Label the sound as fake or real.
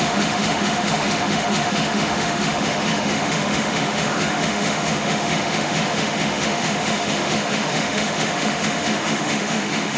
fake